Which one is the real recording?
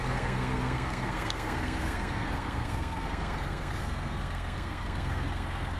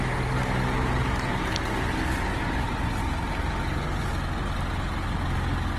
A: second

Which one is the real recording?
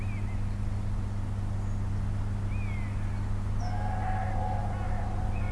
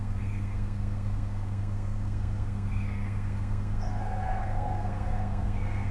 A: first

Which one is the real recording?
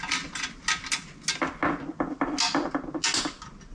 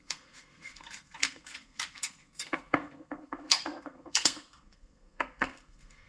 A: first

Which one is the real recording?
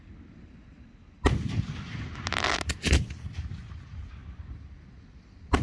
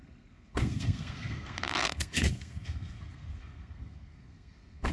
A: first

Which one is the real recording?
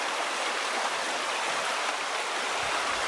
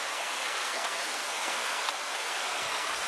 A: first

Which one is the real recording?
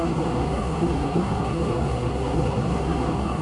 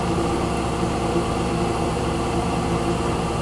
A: second